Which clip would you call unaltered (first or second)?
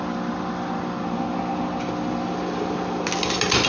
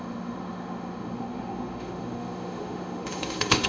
first